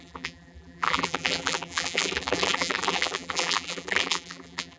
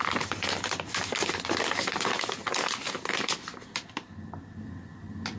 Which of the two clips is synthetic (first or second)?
first